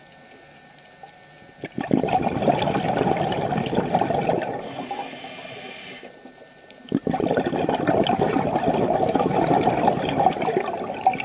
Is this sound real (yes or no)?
yes